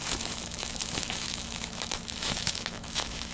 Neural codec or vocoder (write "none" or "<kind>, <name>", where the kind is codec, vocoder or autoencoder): autoencoder, DAC-VAE